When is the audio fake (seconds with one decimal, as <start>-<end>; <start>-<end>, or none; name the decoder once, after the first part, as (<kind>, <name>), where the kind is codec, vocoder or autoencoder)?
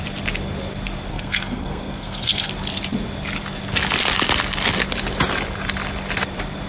1.1-2.5 (codec, SNAC)